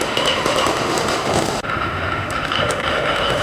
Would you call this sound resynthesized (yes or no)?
yes